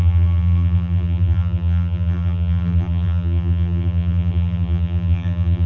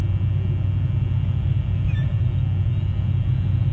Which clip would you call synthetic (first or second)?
first